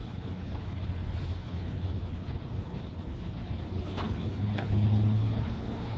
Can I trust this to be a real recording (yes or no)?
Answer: no